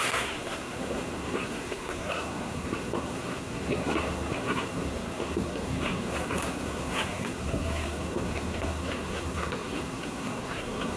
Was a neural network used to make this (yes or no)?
yes